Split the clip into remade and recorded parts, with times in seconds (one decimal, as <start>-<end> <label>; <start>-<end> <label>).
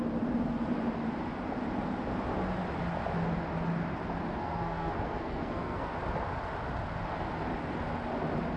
0.0-4.3 recorded; 4.3-5.9 remade; 5.9-8.6 recorded